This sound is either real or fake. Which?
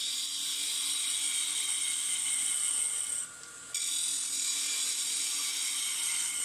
real